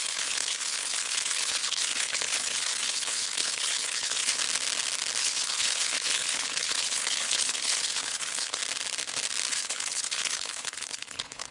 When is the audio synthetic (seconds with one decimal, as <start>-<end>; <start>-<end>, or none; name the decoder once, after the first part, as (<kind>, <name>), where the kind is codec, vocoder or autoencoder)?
0.0-4.4 (codec, HILCodec); 5.2-8.6; 9.5-11.5